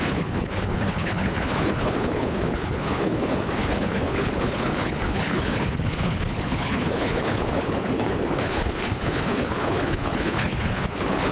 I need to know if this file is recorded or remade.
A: remade